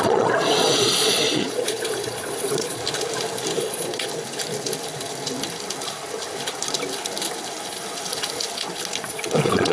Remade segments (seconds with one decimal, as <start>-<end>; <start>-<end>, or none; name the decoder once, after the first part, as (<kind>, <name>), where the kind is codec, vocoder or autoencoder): 0.0-2.8 (vocoder, Vocos); 3.6-4.1; 9.0-9.7